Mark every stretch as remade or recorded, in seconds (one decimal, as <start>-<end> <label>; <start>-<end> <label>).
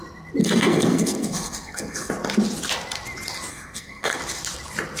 0.0-0.4 recorded; 0.4-2.1 remade; 2.1-3.5 recorded; 3.5-4.2 remade; 4.2-5.0 recorded